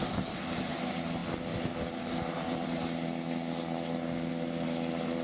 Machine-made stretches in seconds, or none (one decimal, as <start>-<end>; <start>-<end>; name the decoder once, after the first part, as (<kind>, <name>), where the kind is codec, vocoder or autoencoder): none